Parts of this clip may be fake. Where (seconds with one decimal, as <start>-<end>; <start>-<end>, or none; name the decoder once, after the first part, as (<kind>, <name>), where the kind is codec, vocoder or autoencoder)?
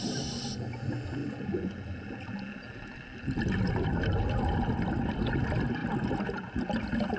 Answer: none